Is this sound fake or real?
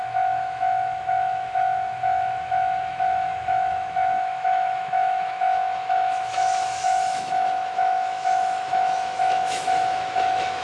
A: fake